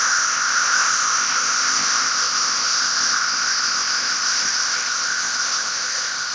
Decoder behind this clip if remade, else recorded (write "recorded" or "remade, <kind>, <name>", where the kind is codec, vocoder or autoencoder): remade, codec, ZipCodec